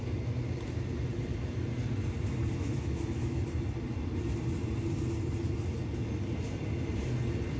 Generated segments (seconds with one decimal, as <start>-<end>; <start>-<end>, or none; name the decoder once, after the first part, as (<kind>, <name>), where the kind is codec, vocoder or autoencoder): 2.6-3.4 (autoencoder, DAC-VAE)